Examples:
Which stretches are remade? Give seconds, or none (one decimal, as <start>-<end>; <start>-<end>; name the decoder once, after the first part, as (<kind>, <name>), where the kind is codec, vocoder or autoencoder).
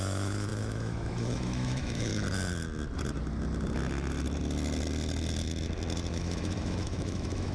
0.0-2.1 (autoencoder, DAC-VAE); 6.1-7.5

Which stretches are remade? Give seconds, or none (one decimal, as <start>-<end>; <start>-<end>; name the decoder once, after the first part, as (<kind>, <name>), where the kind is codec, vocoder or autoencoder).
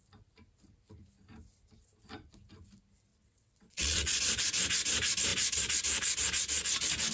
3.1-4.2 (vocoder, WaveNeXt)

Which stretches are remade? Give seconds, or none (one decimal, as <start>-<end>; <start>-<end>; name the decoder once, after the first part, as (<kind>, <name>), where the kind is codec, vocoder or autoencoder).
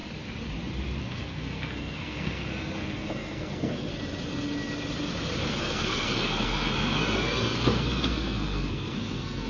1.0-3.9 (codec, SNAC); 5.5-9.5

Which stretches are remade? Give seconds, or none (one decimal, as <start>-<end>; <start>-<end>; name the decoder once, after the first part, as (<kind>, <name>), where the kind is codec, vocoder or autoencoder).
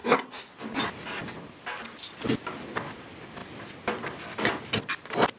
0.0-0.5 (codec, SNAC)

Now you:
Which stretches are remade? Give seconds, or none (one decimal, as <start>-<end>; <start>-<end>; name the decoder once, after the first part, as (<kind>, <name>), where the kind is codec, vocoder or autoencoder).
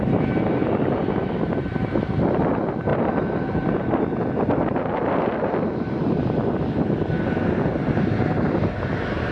none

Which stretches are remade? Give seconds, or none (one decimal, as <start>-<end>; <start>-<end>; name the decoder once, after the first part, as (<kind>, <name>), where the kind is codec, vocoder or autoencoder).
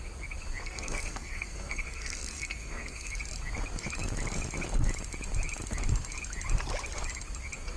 0.6-3.1 (codec, SNAC)